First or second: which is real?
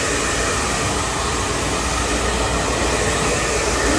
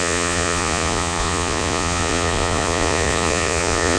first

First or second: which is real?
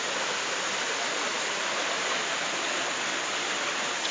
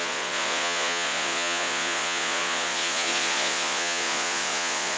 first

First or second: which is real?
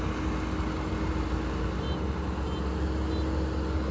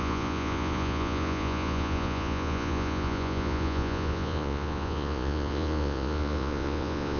first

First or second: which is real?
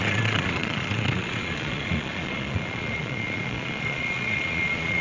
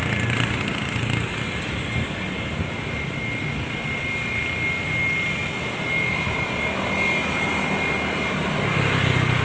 second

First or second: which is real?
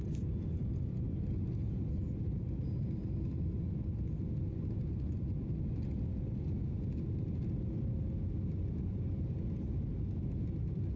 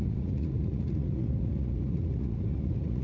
first